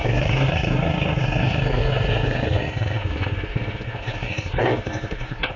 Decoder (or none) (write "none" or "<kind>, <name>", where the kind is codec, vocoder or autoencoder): codec, SNAC